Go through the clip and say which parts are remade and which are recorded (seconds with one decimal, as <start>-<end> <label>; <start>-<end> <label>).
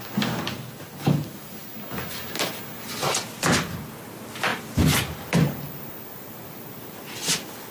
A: 0.0-7.7 recorded